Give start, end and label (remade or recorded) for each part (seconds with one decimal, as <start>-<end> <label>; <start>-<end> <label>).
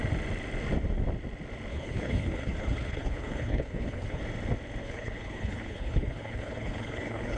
0.0-1.7 recorded; 1.7-4.2 remade; 4.2-4.8 recorded; 4.8-7.4 remade